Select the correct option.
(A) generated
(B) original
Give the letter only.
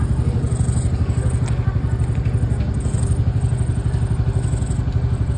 B